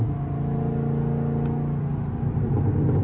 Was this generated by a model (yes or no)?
no